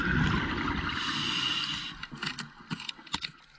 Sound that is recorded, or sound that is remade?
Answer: recorded